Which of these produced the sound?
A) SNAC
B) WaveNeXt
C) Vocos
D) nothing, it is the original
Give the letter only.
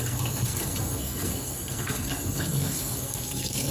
A